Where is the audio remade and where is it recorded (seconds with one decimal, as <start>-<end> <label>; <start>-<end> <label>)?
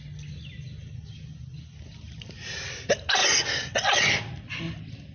0.0-5.1 recorded